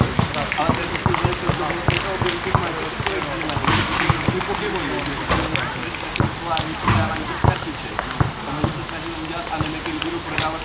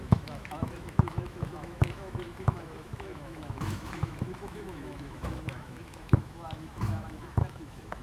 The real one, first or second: first